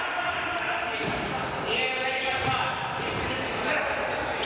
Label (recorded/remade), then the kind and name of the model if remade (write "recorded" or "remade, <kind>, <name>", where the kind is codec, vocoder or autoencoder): recorded